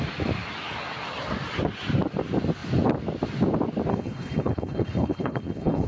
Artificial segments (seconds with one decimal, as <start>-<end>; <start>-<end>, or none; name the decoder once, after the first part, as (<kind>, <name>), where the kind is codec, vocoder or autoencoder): 3.9-5.9 (codec, HILCodec)